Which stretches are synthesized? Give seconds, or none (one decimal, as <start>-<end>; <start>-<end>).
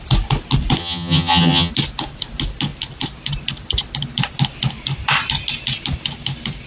0.8-1.7